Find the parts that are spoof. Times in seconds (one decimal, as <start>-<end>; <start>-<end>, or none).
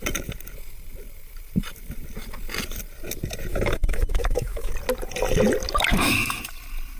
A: 3.5-4.7; 5.9-6.4